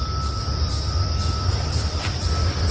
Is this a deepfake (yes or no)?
no